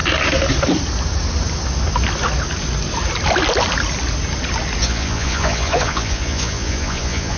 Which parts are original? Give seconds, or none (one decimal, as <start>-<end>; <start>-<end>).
0.0-4.8